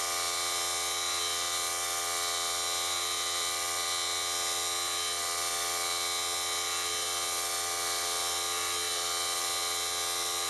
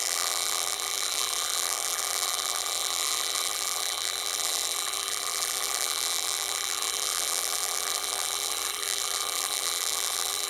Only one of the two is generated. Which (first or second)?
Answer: second